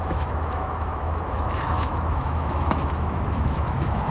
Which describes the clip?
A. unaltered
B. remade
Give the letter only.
B